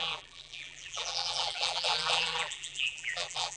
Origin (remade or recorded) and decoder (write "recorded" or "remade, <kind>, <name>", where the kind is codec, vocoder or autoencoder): remade, vocoder, BigVGAN v2